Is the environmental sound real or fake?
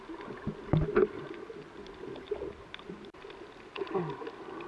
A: real